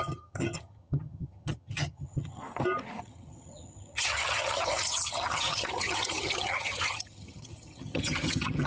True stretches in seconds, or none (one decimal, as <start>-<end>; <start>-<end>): 2.4-3.0